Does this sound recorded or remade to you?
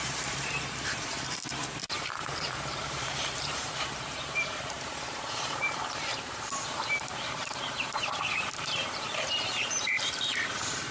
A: remade